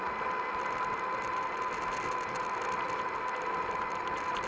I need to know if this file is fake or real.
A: real